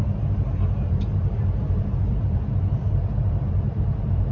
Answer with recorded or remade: remade